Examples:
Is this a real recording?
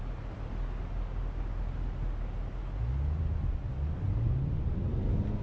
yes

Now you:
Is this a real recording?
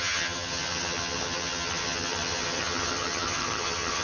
no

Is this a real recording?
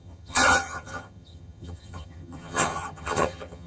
no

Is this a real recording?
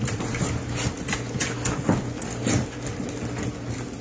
yes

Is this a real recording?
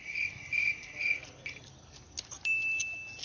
yes